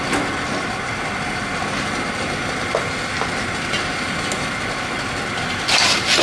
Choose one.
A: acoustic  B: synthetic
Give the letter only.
A